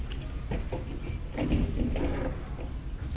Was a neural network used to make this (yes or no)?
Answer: no